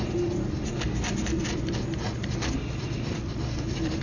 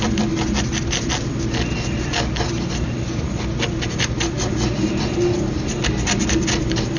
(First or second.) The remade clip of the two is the first